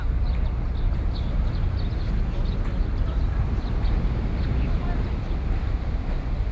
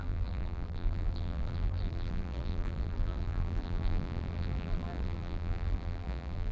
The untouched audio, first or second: first